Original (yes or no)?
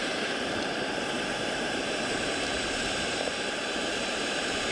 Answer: no